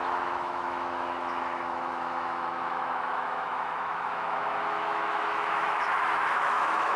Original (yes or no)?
no